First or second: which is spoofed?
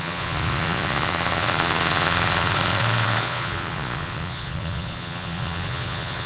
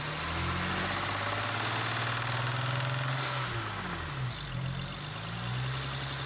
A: first